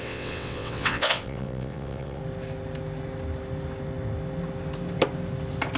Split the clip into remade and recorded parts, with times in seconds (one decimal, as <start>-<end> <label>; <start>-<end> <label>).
0.0-2.2 remade; 2.2-5.8 recorded